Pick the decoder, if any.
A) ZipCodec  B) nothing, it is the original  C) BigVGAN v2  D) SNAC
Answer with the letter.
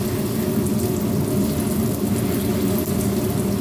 B